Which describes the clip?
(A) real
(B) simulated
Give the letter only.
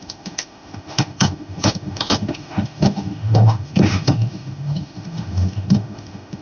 B